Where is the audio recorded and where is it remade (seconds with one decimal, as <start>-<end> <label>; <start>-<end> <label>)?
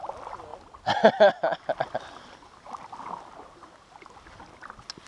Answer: 0.0-5.1 recorded